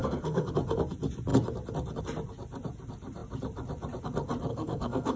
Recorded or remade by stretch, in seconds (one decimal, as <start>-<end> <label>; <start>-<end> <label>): 0.0-0.5 remade; 0.5-4.5 recorded; 4.5-5.2 remade